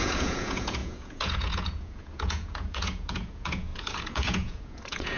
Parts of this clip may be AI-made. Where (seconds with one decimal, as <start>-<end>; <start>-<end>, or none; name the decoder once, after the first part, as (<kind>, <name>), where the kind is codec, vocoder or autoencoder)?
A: 0.0-5.2 (vocoder, Vocos)